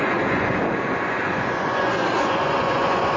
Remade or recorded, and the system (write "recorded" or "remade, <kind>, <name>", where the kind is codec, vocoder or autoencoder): remade, vocoder, Vocos